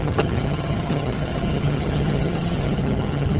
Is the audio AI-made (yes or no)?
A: yes